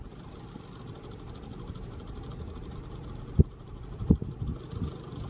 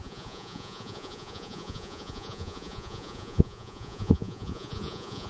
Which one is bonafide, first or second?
first